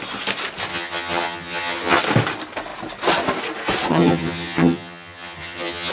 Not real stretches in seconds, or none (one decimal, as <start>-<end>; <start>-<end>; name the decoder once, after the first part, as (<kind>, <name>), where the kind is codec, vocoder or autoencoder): 0.7-2.0 (vocoder, HiFi-GAN); 3.9-5.9